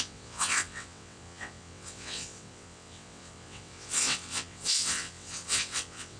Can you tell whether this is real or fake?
fake